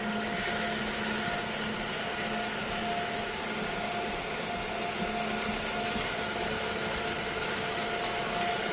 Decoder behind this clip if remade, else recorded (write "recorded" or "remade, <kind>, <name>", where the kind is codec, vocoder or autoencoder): recorded